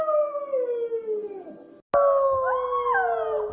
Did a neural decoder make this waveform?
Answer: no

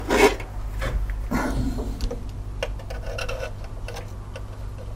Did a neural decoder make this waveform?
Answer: no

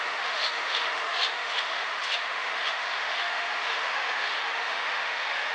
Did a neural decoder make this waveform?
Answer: yes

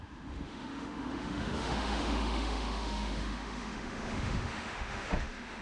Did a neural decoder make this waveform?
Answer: yes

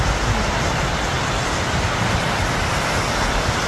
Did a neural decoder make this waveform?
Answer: no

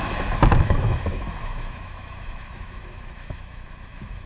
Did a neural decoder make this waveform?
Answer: yes